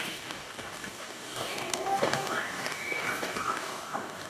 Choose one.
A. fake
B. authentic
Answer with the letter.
A